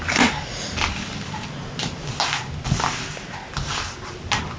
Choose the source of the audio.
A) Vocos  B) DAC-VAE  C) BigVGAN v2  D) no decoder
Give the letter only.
D